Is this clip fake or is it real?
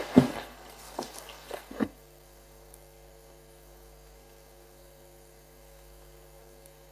fake